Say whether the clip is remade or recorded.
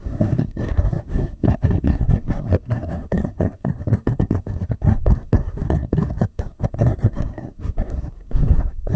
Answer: remade